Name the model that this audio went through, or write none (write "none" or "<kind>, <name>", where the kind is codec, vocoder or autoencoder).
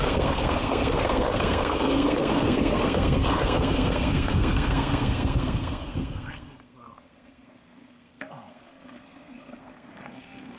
codec, SNAC